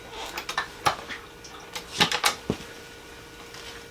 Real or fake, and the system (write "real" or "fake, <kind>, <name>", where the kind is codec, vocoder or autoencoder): real